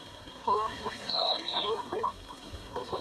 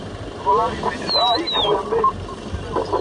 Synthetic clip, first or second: first